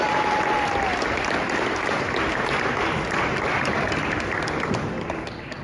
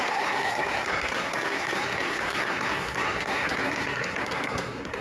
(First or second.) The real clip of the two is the first